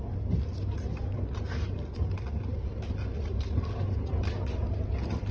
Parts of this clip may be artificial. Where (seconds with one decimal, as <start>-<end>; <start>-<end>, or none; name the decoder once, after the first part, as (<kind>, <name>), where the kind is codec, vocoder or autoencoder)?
none